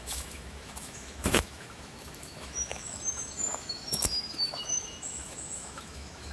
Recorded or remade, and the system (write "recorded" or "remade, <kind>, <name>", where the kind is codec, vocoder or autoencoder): remade, autoencoder, DAC-VAE